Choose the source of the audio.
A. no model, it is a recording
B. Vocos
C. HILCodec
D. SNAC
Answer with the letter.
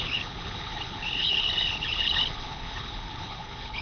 C